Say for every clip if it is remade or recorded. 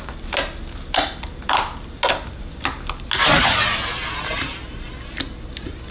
recorded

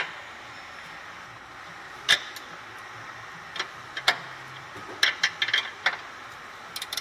recorded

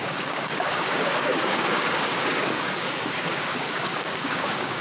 remade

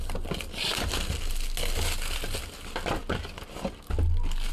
recorded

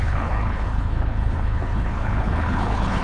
remade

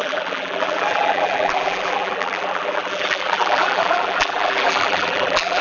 remade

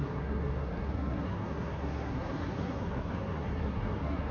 remade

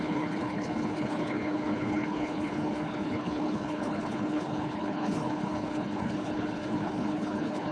remade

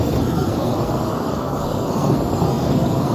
remade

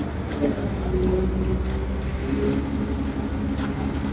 recorded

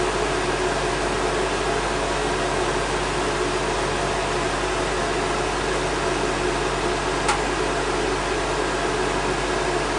recorded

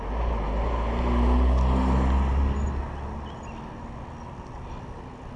recorded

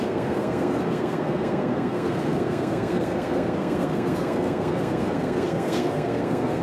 remade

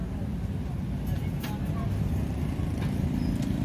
recorded